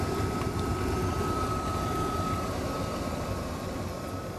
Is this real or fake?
real